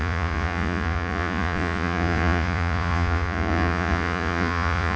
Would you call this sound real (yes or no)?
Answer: no